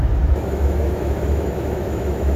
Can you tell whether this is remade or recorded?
remade